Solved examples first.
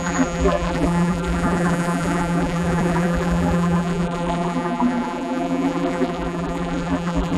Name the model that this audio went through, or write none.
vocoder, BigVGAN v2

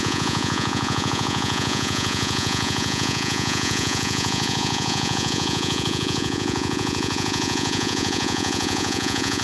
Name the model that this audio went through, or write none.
vocoder, Vocos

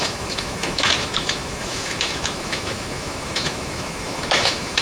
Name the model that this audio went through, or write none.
autoencoder, DAC-VAE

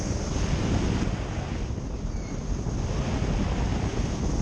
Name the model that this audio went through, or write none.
none